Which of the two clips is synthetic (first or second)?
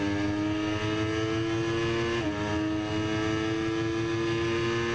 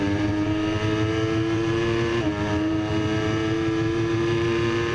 second